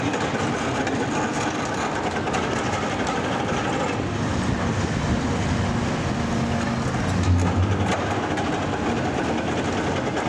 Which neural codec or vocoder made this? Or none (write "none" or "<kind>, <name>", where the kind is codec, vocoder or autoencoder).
none